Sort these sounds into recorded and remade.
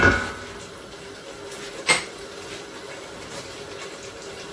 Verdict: recorded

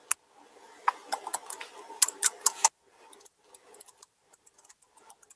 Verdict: recorded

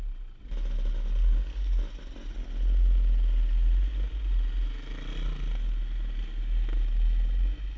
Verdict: recorded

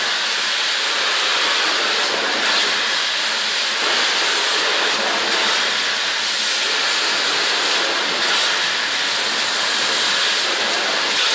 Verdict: recorded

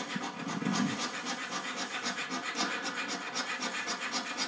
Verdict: recorded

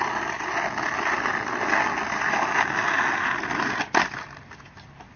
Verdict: recorded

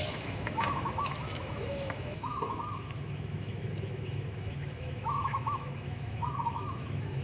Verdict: remade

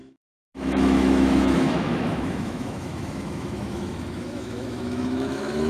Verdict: remade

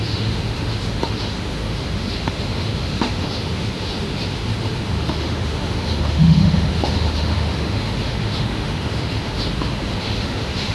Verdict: remade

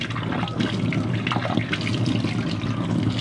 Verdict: recorded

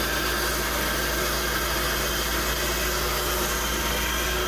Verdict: recorded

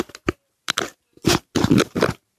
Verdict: recorded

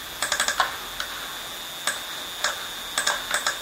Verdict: recorded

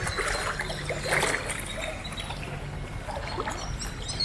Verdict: recorded